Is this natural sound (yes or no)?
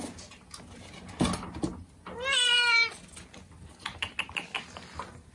yes